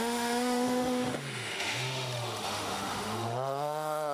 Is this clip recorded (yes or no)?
no